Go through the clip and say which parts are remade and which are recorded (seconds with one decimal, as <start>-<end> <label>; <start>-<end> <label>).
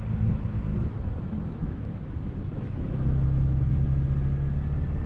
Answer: 0.0-0.7 recorded; 0.7-3.7 remade; 3.7-5.1 recorded